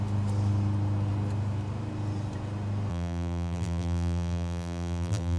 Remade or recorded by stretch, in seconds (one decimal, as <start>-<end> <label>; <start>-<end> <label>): 0.0-2.9 recorded; 2.9-5.4 remade